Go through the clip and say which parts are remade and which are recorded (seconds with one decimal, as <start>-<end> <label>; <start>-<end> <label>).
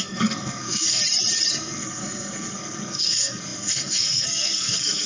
0.0-1.0 remade; 1.0-1.5 recorded; 1.5-5.1 remade